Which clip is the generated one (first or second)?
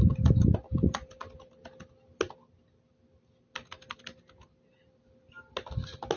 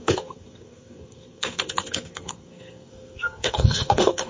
second